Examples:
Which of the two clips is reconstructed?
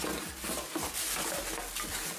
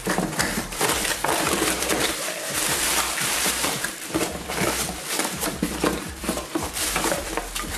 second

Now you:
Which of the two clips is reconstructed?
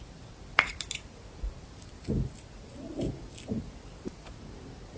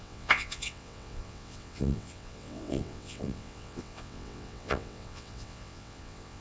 second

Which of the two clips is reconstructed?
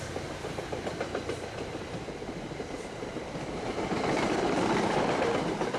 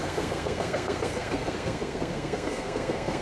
second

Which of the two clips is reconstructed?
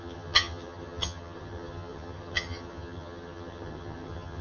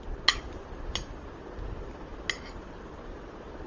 first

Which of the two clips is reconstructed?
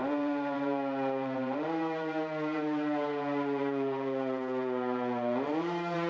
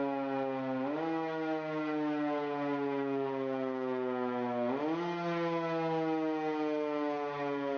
first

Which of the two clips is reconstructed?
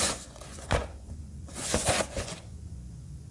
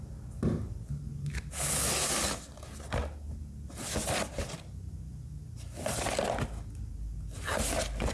first